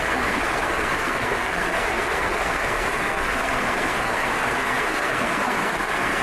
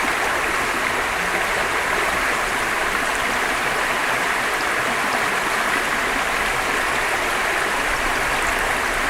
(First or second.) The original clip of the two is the second